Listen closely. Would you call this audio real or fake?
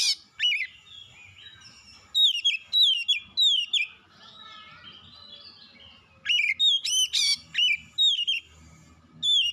real